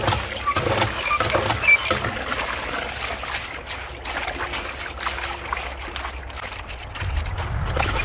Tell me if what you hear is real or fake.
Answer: real